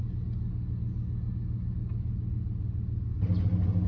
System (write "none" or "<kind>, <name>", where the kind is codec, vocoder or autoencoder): none